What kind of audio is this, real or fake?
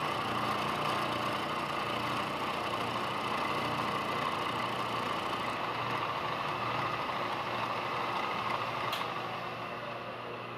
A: real